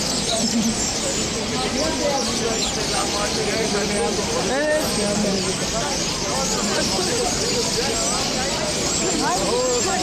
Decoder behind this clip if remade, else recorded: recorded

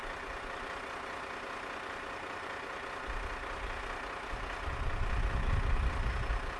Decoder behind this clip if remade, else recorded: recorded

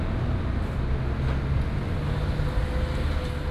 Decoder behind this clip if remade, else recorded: recorded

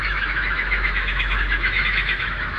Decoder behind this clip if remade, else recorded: remade, autoencoder, DAC-VAE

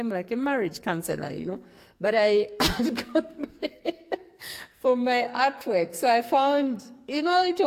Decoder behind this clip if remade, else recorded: remade, codec, SNAC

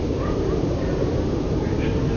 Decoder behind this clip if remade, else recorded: remade, vocoder, BigVGAN v2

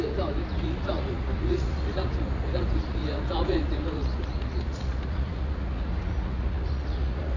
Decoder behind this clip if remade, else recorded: remade, vocoder, Vocos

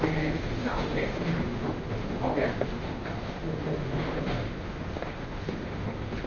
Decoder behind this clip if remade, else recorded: remade, autoencoder, DAC-VAE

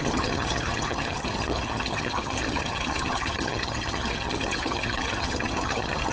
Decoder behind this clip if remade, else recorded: remade, vocoder, HiFi-GAN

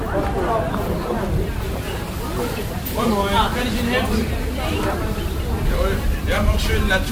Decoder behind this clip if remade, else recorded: recorded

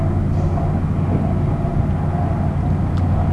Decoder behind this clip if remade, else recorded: recorded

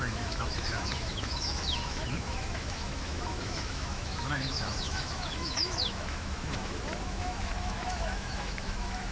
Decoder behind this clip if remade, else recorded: remade, autoencoder, DAC-VAE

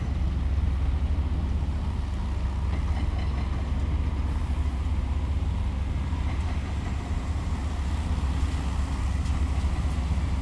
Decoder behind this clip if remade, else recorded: recorded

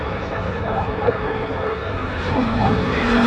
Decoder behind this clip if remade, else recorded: remade, codec, SNAC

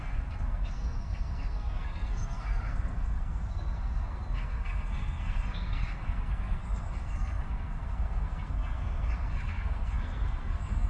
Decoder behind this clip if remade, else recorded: remade, codec, SNAC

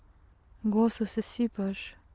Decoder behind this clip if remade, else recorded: recorded